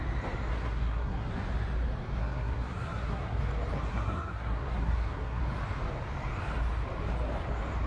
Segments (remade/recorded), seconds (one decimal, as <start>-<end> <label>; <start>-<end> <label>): 0.0-0.5 recorded; 0.5-1.3 remade; 1.3-2.2 recorded; 2.2-3.4 remade; 3.4-3.9 recorded; 3.9-5.4 remade; 5.4-7.9 recorded